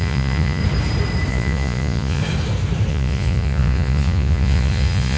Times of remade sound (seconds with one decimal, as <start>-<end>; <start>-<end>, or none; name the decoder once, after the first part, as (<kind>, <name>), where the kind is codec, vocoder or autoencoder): 0.0-0.6 (vocoder, Vocos); 1.3-2.2; 2.9-5.2